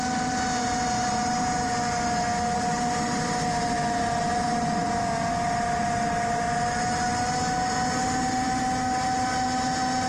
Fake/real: real